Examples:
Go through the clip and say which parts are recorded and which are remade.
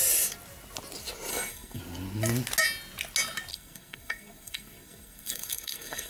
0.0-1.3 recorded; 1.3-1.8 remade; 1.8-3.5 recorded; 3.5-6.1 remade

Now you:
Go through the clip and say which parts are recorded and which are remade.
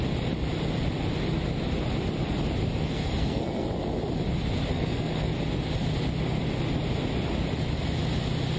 0.0-2.8 recorded; 2.8-3.7 remade; 3.7-4.7 recorded; 4.7-5.3 remade; 5.3-8.6 recorded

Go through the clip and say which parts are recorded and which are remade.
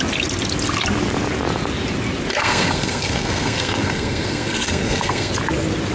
0.0-2.3 recorded; 2.3-5.3 remade; 5.3-5.9 recorded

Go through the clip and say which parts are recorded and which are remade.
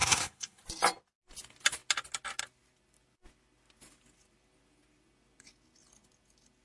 0.0-0.6 remade; 0.6-6.6 recorded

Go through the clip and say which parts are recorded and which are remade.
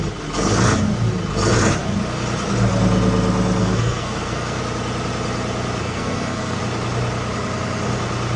0.0-3.6 recorded; 3.6-4.6 remade; 4.6-5.8 recorded; 5.8-6.6 remade; 6.6-8.4 recorded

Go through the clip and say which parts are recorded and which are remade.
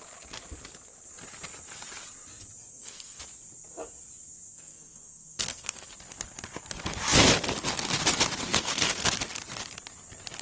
0.0-2.7 recorded; 2.7-3.2 remade; 3.2-4.5 recorded; 4.5-5.9 remade; 5.9-8.5 recorded; 8.5-9.0 remade; 9.0-10.4 recorded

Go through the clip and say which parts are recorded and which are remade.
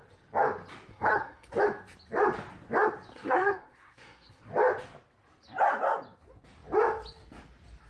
0.0-0.9 recorded; 0.9-1.6 remade; 1.6-3.1 recorded; 3.1-4.4 remade; 4.4-7.9 recorded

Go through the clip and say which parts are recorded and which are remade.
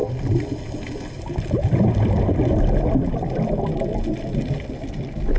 0.0-5.4 recorded